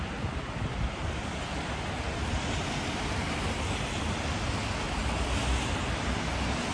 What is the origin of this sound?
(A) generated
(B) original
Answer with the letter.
B